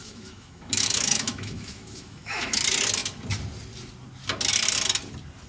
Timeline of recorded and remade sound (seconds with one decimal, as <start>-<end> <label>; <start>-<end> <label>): 0.0-2.6 remade; 2.6-5.5 recorded